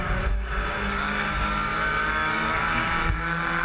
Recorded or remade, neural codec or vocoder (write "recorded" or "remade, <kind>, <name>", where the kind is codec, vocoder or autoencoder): remade, codec, DAC